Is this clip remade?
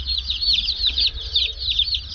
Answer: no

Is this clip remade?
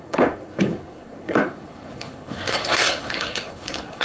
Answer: yes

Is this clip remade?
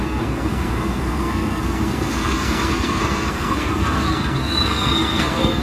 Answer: yes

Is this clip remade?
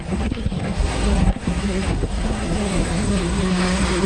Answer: yes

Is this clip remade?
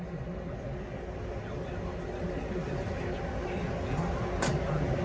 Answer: no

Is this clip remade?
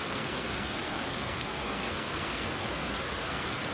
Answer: yes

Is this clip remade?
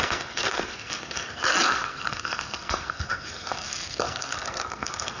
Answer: yes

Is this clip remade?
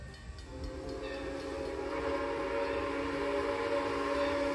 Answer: no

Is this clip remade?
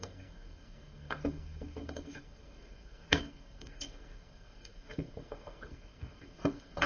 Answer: yes